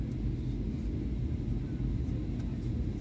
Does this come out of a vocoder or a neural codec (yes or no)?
no